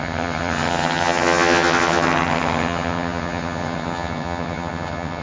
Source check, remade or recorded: remade